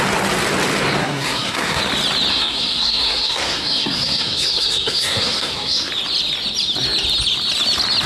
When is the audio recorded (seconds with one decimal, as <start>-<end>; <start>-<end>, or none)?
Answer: 0.0-1.0; 1.8-2.3; 5.9-8.1